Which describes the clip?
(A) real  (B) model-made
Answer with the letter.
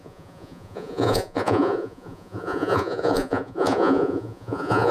B